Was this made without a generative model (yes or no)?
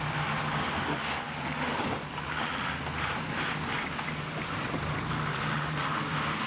yes